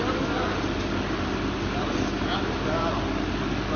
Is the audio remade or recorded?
recorded